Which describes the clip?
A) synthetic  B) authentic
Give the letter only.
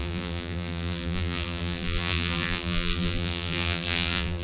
A